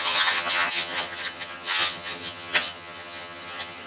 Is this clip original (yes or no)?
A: no